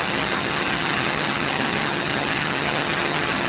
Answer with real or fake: fake